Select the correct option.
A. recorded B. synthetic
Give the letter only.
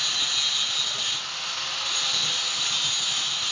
A